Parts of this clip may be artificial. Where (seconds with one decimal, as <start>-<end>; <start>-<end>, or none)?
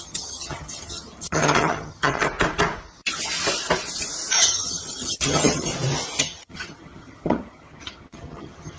0.0-2.3; 4.4-5.7; 6.2-8.8